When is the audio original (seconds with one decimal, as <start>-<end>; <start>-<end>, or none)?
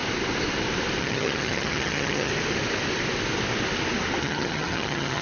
0.0-1.0; 2.3-4.2